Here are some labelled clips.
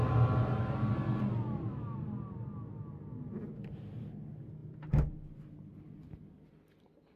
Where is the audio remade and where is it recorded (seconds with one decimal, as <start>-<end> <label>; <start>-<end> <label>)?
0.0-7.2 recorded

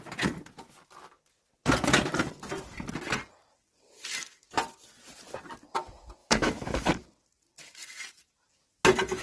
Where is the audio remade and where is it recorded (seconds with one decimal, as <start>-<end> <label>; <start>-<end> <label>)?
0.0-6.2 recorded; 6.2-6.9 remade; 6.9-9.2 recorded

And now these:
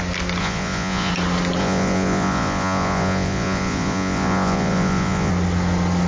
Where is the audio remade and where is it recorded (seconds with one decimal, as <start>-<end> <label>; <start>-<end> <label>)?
0.0-0.4 recorded; 0.4-1.1 remade; 1.1-1.6 recorded; 1.6-5.3 remade; 5.3-6.1 recorded

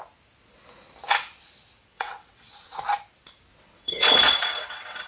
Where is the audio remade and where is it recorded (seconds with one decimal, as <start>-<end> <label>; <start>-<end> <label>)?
0.0-1.8 recorded; 1.8-2.8 remade; 2.8-3.5 recorded; 3.5-5.1 remade